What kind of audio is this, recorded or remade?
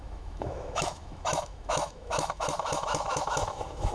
remade